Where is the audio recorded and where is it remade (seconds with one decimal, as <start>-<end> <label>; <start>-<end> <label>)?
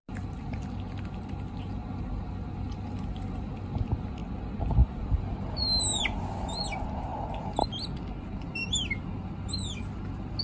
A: 0.0-10.4 recorded